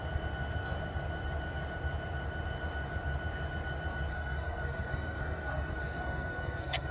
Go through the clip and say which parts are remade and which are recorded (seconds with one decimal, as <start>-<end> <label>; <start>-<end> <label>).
0.0-4.1 recorded; 4.1-6.9 remade